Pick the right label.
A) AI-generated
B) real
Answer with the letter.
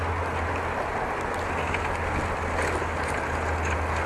B